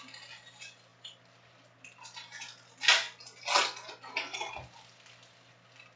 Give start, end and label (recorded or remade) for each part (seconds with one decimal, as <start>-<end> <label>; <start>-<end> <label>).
0.0-6.0 recorded